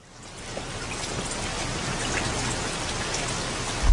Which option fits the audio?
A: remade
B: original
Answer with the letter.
B